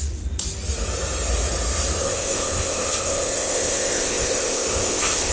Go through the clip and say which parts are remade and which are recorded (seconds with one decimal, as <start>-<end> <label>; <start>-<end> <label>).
0.0-2.0 recorded; 2.0-5.3 remade